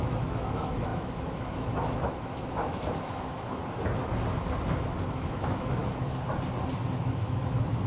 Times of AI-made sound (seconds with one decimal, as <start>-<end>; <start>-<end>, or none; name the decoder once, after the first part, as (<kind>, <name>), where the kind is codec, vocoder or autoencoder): 0.0-3.6 (autoencoder, DAC-VAE); 5.1-5.8; 7.0-7.9